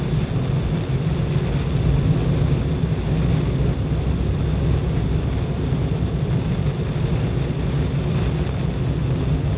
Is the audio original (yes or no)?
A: yes